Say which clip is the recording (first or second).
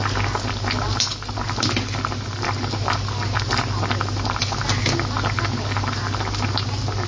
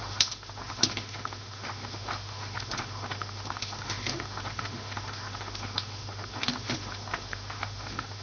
first